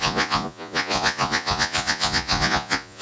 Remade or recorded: remade